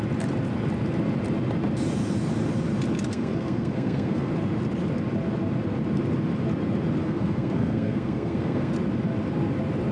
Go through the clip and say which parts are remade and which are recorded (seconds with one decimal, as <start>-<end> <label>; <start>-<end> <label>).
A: 0.0-3.1 recorded; 3.1-4.3 remade; 4.3-7.0 recorded; 7.0-8.7 remade; 8.7-9.9 recorded